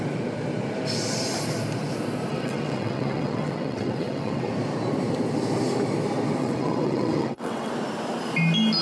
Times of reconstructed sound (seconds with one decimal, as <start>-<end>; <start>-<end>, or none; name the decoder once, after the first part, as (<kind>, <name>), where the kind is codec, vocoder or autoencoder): 2.3-4.5 (vocoder, WaveNeXt); 6.4-7.7